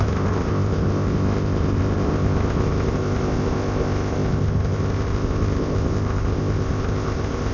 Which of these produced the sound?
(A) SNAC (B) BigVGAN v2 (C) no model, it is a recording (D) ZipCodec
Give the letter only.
D